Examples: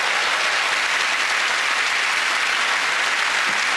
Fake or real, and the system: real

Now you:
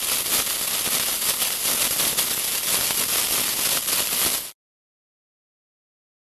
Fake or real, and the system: real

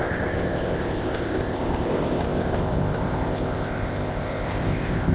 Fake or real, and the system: fake, codec, ZipCodec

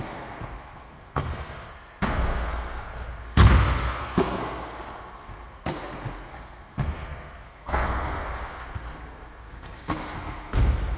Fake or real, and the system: fake, codec, SNAC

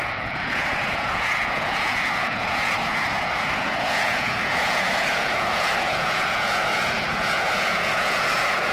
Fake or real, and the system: fake, vocoder, Vocos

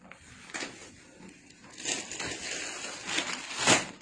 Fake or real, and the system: real